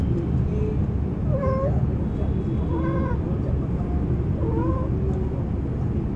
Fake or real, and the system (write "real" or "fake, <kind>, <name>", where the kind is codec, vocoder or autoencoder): real